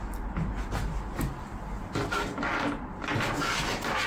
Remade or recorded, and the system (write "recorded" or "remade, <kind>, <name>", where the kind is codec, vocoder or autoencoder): recorded